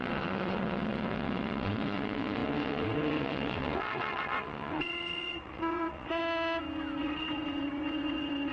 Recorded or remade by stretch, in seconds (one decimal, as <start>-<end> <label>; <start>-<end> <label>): 0.0-6.2 remade; 6.2-7.0 recorded; 7.0-8.5 remade